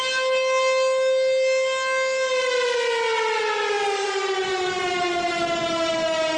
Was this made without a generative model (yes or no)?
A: yes